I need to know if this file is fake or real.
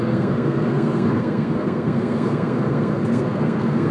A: fake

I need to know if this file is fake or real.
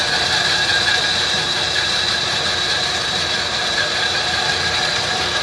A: fake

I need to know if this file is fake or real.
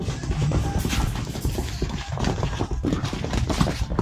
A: real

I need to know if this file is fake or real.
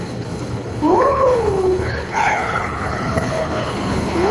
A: fake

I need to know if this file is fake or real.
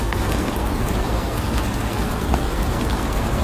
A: fake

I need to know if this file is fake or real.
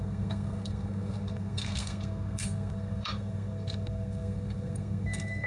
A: fake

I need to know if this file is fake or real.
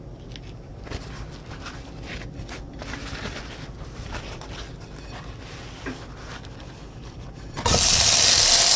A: real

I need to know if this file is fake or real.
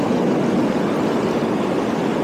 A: real